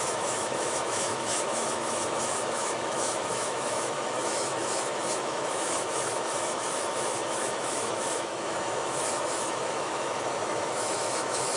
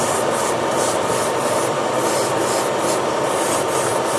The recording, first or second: second